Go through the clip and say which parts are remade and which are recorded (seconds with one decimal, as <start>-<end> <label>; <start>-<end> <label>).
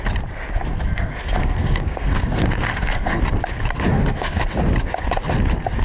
0.0-0.7 recorded; 0.7-3.2 remade; 3.2-3.9 recorded; 3.9-4.4 remade; 4.4-5.8 recorded